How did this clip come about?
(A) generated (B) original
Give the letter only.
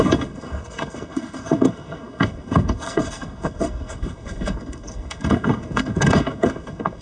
A